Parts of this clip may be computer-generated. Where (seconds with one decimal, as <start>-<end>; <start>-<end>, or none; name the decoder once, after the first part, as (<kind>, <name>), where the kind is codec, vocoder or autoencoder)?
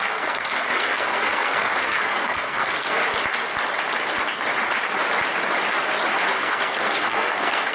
0.0-3.0 (codec, SNAC); 6.3-7.7